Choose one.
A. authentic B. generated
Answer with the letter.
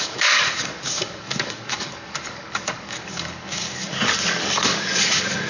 B